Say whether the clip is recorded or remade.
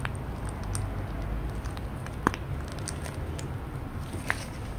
recorded